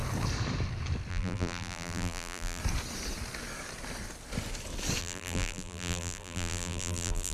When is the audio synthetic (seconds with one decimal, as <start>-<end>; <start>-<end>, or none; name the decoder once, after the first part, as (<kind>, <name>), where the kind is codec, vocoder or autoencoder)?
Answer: 1.1-2.6 (vocoder, BigVGAN v2); 5.0-7.3